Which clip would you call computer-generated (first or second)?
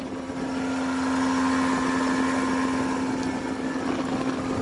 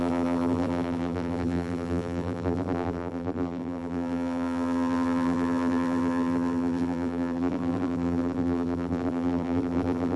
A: second